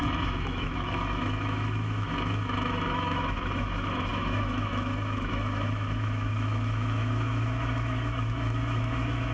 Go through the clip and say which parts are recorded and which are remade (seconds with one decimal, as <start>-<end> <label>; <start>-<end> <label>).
0.0-9.3 remade